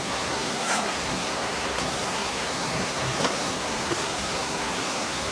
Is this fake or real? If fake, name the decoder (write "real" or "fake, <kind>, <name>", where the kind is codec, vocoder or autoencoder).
fake, codec, SNAC